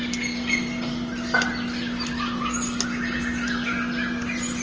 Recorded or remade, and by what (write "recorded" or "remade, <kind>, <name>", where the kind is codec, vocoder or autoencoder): recorded